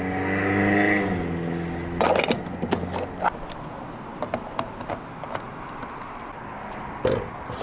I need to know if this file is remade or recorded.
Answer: recorded